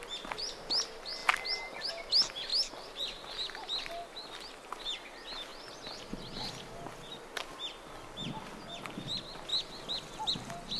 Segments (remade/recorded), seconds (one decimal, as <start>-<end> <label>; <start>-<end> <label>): 0.0-10.8 recorded